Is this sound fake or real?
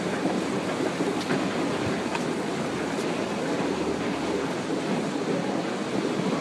real